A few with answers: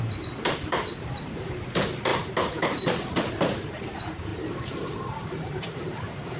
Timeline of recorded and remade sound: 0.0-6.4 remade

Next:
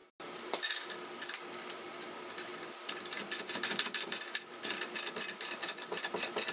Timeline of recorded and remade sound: 0.0-2.5 recorded; 2.5-4.6 remade; 4.6-6.5 recorded

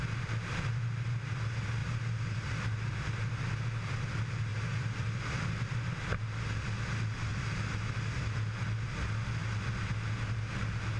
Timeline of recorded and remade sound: 0.0-1.8 recorded; 1.8-3.3 remade; 3.3-4.5 recorded; 4.5-5.2 remade; 5.2-11.0 recorded